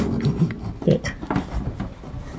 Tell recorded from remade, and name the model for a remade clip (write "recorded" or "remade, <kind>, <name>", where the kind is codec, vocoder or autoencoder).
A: recorded